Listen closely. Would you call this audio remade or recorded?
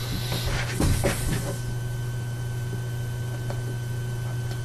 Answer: remade